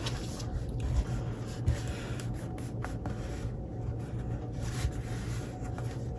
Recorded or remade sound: recorded